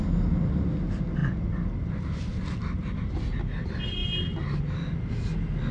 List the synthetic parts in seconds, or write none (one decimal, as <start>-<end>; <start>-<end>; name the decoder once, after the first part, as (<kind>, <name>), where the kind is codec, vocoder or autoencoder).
none